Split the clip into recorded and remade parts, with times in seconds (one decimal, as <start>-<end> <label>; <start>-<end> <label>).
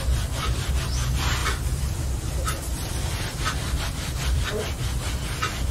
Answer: 0.0-1.4 recorded; 1.4-4.5 remade; 4.5-5.7 recorded